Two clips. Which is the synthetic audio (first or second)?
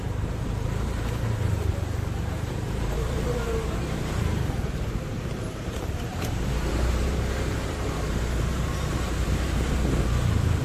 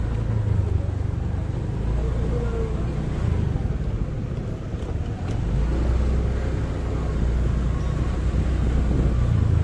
first